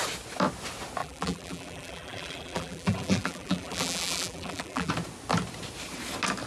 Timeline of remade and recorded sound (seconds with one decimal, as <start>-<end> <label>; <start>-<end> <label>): 0.0-1.0 recorded; 1.0-4.9 remade; 4.9-6.5 recorded